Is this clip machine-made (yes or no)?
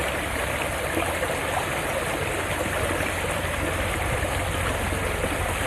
no